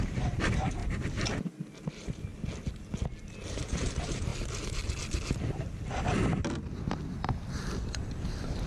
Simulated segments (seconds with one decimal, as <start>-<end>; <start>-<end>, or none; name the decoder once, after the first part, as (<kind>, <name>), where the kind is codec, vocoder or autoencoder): 0.0-0.8 (vocoder, BigVGAN v2); 1.9-2.3; 3.5-4.3; 7.9-8.7